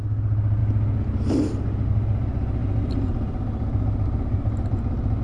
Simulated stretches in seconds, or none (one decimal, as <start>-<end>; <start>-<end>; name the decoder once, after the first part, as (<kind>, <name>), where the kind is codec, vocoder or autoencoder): 2.6-5.2 (vocoder, BigVGAN v2)

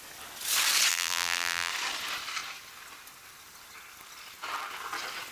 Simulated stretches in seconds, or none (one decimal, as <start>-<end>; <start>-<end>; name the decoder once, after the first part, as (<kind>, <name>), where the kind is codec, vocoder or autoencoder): 0.9-1.7 (vocoder, BigVGAN v2)